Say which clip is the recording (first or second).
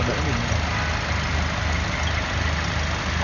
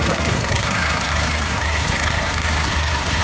first